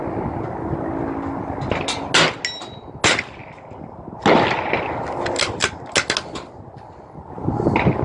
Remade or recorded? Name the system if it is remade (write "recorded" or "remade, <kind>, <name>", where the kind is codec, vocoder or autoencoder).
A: recorded